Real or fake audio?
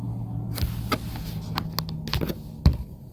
real